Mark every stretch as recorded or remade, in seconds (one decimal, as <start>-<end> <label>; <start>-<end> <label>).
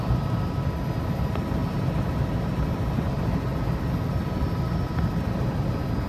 0.0-6.1 recorded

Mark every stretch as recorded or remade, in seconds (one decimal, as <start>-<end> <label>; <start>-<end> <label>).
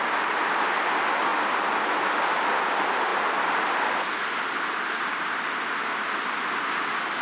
0.0-7.2 recorded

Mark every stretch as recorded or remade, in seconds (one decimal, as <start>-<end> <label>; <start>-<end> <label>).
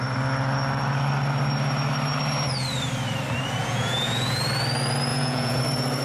0.0-3.6 recorded; 3.6-4.4 remade; 4.4-5.1 recorded; 5.1-5.6 remade; 5.6-6.0 recorded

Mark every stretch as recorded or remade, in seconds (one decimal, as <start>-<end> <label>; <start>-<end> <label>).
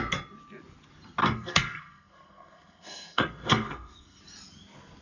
0.0-1.2 recorded; 1.2-4.2 remade; 4.2-5.0 recorded